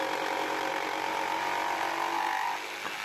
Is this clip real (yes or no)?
yes